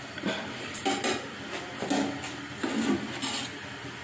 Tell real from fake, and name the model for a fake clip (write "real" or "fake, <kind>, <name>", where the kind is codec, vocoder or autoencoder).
real